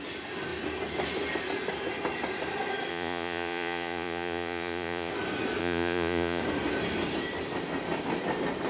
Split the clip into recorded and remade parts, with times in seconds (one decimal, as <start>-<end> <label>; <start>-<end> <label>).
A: 0.0-2.9 recorded; 2.9-5.1 remade; 5.1-5.6 recorded; 5.6-6.4 remade; 6.4-8.7 recorded